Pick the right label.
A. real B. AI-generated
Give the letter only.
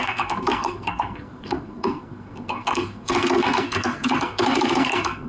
B